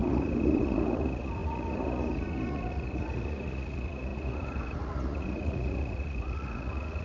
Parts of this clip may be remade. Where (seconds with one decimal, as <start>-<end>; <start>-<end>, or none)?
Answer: 0.0-7.0